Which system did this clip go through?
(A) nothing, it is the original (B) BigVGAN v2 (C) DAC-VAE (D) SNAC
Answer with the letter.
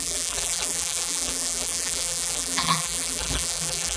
B